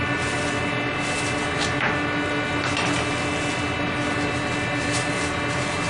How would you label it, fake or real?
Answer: real